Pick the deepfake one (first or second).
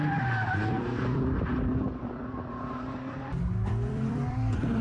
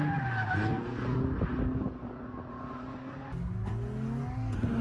first